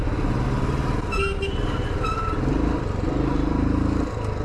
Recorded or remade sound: recorded